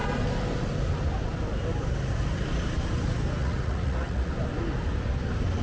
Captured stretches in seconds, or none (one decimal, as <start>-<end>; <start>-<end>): 0.0-3.4; 4.3-5.6